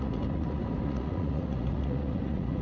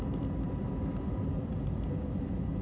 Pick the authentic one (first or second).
second